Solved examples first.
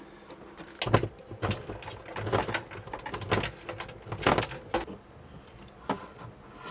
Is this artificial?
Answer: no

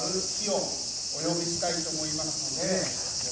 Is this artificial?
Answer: no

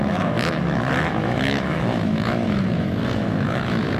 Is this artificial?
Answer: yes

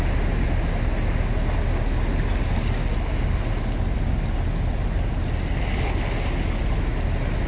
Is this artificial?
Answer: no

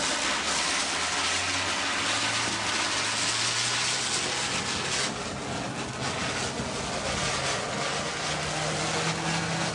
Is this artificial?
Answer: no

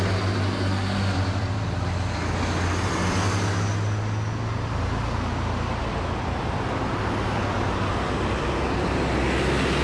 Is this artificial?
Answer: no